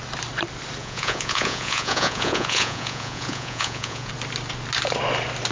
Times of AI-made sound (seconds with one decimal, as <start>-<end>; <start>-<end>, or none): 0.8-4.1